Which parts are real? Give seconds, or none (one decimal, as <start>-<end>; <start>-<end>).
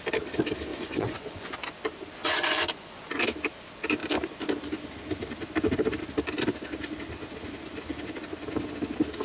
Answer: 0.0-0.7; 1.5-2.2; 3.1-9.2